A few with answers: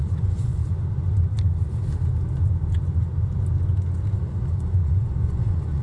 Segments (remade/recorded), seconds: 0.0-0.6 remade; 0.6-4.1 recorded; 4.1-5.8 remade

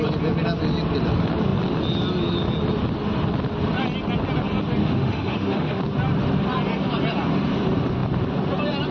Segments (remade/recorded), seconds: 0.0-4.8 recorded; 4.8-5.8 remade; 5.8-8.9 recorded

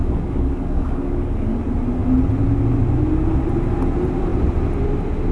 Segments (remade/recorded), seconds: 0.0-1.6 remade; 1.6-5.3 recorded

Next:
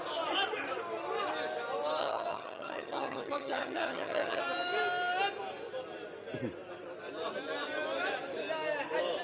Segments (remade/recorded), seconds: 0.0-2.0 recorded; 2.0-4.4 remade; 4.4-9.2 recorded

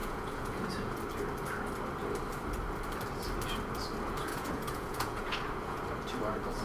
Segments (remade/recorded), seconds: 0.0-1.0 remade; 1.0-4.3 recorded; 4.3-5.8 remade; 5.8-6.6 recorded

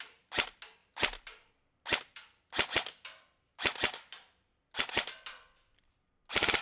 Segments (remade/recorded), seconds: 0.0-6.6 recorded